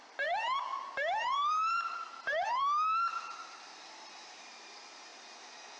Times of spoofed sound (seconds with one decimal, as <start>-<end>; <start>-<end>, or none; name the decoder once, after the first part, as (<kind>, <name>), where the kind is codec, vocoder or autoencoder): 0.0-5.8 (vocoder, BigVGAN v2)

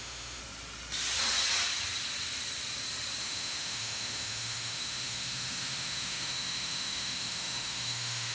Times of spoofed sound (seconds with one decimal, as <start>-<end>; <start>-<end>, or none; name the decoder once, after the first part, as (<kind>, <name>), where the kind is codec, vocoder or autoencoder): 0.0-0.4 (autoencoder, DAC-VAE); 3.2-8.3